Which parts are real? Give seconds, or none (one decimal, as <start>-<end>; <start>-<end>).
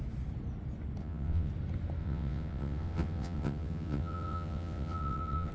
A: 0.0-1.0; 1.5-2.0